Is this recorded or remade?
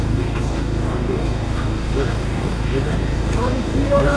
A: remade